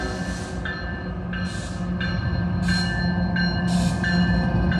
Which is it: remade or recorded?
recorded